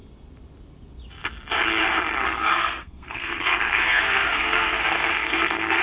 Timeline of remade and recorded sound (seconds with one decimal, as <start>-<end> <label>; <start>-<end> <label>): 0.0-2.2 recorded; 2.2-5.8 remade